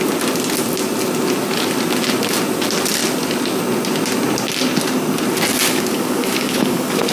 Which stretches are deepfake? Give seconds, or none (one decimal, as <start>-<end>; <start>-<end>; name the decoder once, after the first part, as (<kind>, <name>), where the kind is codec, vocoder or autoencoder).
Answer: 5.5-7.1 (codec, DAC)